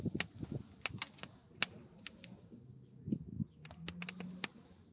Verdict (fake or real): real